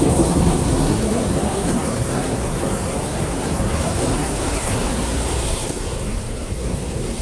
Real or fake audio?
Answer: fake